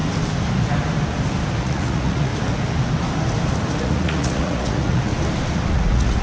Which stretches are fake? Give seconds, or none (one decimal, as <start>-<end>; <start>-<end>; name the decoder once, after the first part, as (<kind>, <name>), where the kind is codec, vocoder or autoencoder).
1.6-2.3 (vocoder, Vocos); 3.8-5.1; 5.7-6.2